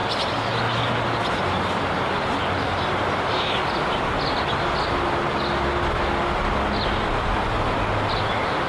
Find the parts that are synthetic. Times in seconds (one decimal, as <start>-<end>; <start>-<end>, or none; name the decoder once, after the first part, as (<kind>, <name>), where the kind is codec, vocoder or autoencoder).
none